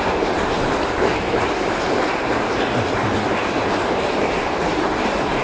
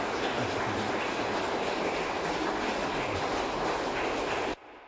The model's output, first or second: first